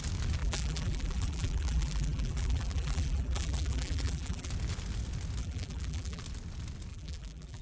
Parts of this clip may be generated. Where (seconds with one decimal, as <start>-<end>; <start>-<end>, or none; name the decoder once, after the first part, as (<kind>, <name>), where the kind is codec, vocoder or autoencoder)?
0.4-4.5 (vocoder, BigVGAN v2); 5.4-6.2; 6.9-7.6